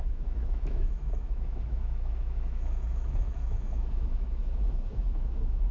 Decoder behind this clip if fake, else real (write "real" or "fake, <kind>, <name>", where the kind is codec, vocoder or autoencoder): fake, autoencoder, DAC-VAE